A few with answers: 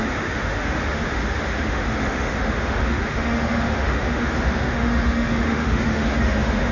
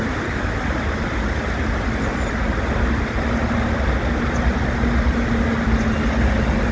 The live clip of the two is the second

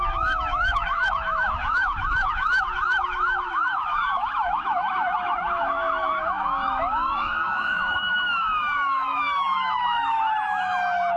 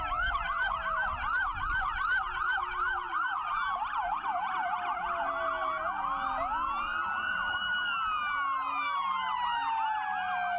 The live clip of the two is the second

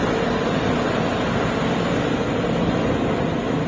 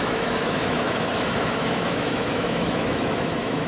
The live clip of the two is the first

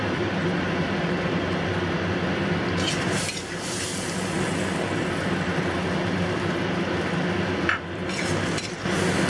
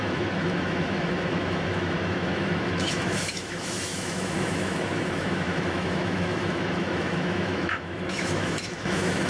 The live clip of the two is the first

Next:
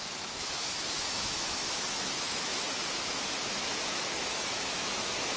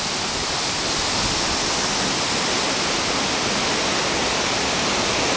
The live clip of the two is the second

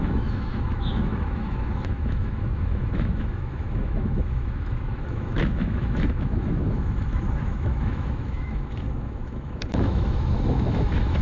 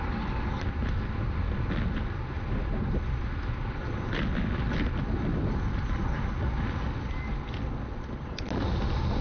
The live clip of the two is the second